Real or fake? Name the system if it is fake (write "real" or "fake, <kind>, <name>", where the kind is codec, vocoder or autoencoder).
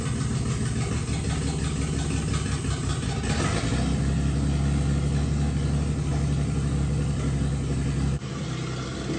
real